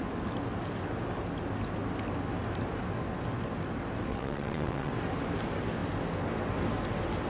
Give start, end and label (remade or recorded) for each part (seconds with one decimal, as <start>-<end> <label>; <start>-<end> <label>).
0.0-4.1 recorded; 4.1-4.9 remade; 4.9-7.3 recorded